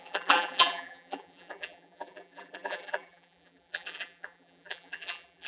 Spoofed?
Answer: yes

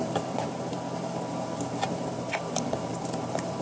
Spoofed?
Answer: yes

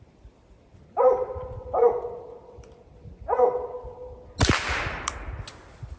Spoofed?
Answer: no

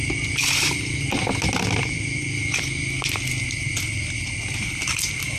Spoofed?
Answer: no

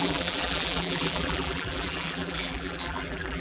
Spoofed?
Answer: yes